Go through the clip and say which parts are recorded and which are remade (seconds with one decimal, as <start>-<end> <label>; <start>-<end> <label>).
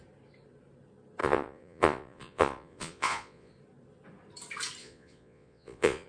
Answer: 0.0-1.2 recorded; 1.2-3.5 remade; 3.5-4.8 recorded; 4.8-6.1 remade